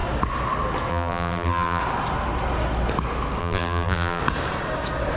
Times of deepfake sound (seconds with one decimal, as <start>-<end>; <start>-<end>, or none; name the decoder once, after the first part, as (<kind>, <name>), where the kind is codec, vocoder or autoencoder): 0.9-1.8 (vocoder, BigVGAN v2); 3.4-4.2

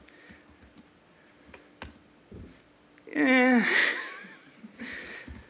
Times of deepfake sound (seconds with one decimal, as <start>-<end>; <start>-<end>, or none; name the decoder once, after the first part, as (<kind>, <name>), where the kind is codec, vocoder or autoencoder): none

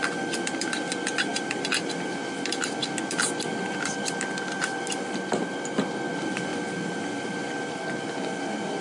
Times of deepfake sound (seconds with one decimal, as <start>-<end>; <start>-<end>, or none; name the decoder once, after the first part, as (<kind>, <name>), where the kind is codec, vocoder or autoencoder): none

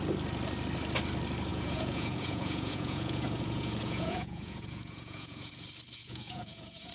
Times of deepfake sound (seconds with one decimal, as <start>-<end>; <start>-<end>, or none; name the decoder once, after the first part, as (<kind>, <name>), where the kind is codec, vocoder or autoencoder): 1.5-5.5 (vocoder, Vocos); 6.0-6.9

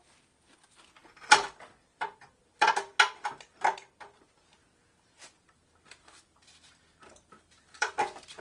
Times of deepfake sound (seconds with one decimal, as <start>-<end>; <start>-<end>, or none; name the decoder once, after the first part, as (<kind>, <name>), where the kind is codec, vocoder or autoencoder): 1.0-2.7 (vocoder, BigVGAN v2); 4.6-7.9

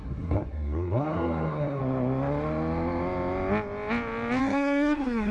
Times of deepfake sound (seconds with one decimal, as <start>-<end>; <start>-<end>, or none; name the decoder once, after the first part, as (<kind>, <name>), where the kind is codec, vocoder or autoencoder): 0.0-1.8 (codec, SNAC); 4.4-5.3

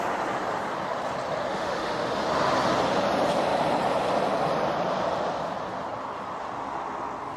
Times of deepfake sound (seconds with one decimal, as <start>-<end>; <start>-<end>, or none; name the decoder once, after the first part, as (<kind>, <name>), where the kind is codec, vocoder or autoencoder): 1.5-2.2 (autoencoder, DAC-VAE)

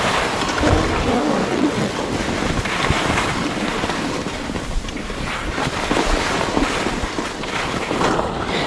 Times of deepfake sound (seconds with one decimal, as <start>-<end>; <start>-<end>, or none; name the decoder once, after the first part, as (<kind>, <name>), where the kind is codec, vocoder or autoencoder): 1.5-2.0 (vocoder, WaveNeXt)